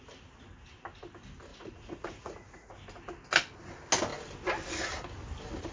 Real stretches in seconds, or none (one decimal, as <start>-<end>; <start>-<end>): 0.0-1.5; 2.7-5.7